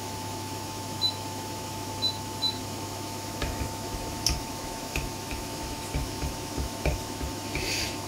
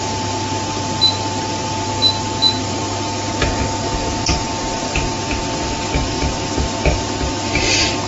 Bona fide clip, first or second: second